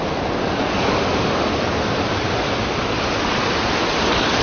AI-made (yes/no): no